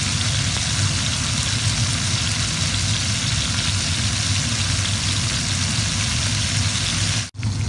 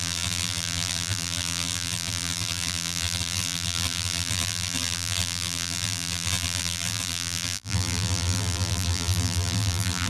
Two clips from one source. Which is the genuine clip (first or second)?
first